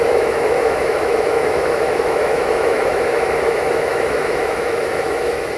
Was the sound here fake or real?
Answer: fake